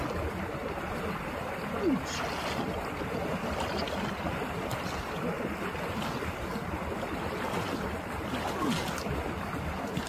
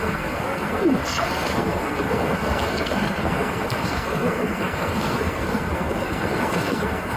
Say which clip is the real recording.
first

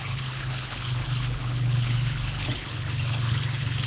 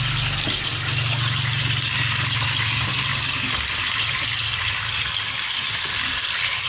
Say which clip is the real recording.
second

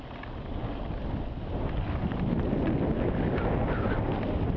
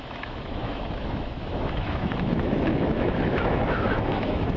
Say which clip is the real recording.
first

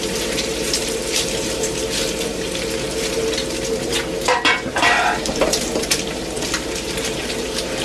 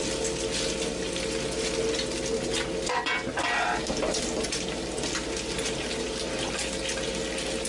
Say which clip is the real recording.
second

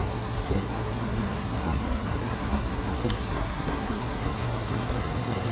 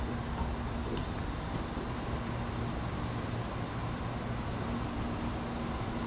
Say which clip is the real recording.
second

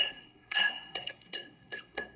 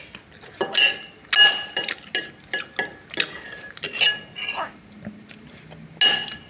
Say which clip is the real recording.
second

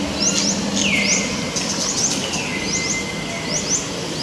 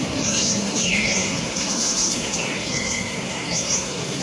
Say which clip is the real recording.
first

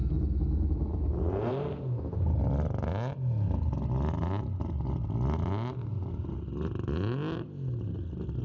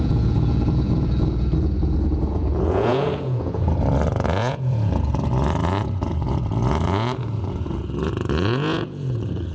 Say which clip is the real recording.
first